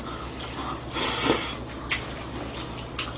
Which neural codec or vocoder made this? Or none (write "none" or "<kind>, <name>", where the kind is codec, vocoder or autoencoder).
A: none